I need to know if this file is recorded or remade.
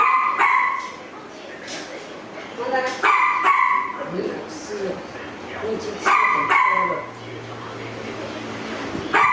recorded